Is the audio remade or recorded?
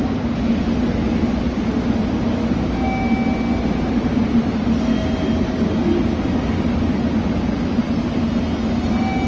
recorded